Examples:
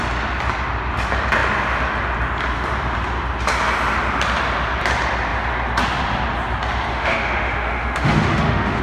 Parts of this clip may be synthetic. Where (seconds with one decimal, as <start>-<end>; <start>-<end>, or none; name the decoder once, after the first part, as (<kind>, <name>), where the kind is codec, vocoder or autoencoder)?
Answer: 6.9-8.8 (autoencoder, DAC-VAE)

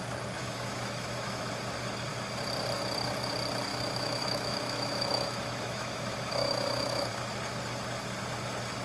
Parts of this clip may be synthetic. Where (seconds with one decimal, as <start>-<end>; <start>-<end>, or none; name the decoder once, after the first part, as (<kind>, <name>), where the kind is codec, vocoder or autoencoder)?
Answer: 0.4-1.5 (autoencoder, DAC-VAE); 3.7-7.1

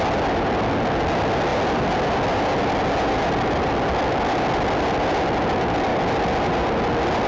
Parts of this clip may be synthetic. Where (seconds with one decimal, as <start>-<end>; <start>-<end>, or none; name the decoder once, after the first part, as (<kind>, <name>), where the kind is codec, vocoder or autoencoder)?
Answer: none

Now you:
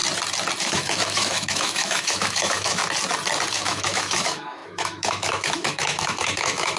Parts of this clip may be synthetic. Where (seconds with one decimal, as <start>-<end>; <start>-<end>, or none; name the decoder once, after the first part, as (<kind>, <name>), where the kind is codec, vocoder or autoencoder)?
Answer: 0.6-2.8 (autoencoder, DAC-VAE); 3.5-6.8

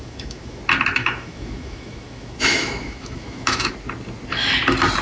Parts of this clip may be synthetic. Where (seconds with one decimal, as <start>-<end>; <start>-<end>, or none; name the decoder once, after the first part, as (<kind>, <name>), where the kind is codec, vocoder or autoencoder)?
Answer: 0.0-0.6 (autoencoder, DAC-VAE); 1.0-3.7

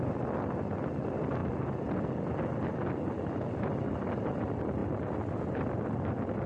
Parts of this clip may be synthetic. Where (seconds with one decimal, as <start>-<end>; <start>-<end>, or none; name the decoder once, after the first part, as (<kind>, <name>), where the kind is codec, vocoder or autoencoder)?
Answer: none